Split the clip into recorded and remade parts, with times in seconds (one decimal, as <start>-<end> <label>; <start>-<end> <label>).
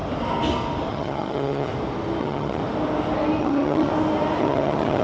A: 0.0-0.9 recorded; 0.9-1.7 remade; 1.7-2.2 recorded; 2.2-2.6 remade; 2.6-3.4 recorded; 3.4-3.9 remade; 3.9-4.4 recorded; 4.4-5.0 remade